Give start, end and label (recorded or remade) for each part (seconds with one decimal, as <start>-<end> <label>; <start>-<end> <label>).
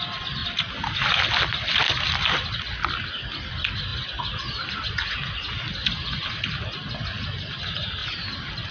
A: 0.0-8.0 recorded; 8.0-8.7 remade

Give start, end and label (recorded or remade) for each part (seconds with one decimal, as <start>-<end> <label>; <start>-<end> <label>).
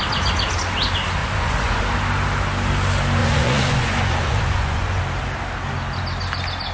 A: 0.0-1.2 recorded; 1.2-1.8 remade; 1.8-3.2 recorded; 3.2-5.0 remade; 5.0-6.7 recorded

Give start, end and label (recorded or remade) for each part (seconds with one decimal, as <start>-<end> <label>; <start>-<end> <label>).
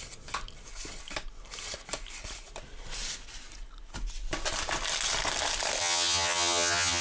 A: 0.0-5.8 recorded; 5.8-7.0 remade